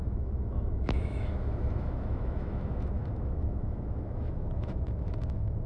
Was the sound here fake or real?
fake